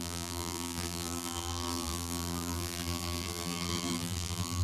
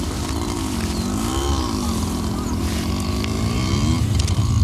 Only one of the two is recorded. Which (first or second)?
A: second